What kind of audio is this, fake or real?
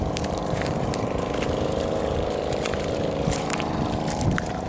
fake